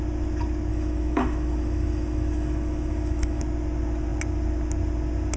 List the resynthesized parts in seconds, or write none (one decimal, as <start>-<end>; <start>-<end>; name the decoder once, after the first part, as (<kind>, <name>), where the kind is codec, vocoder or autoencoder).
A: 0.7-3.4 (autoencoder, DAC-VAE)